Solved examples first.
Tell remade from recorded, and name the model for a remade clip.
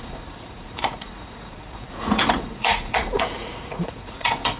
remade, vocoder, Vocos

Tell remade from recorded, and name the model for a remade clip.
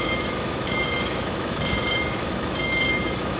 remade, autoencoder, DAC-VAE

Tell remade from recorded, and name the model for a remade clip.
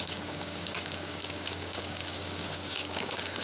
remade, codec, DAC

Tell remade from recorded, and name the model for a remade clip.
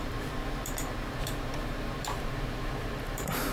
remade, vocoder, BigVGAN v2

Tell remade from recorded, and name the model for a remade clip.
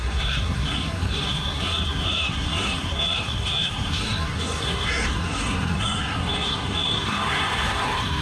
remade, codec, SNAC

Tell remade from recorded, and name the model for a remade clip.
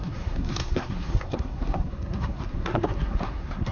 remade, codec, SNAC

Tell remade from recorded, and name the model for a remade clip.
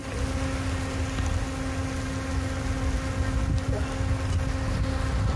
recorded